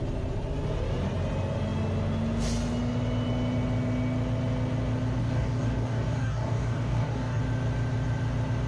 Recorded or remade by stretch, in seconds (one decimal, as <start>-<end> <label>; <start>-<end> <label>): 0.0-5.2 recorded; 5.2-7.4 remade; 7.4-8.7 recorded